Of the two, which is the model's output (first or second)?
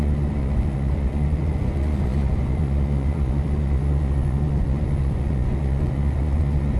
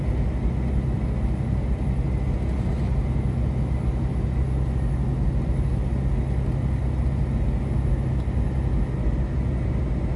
first